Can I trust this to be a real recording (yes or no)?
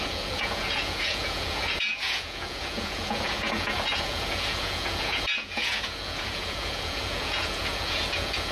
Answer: no